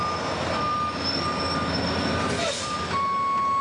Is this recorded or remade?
recorded